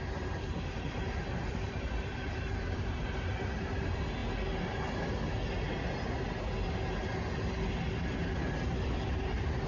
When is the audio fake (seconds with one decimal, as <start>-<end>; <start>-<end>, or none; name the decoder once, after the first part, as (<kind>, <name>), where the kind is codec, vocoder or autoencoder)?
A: 0.0-4.2 (vocoder, BigVGAN v2); 9.1-9.7